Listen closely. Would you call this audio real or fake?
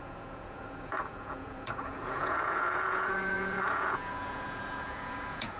fake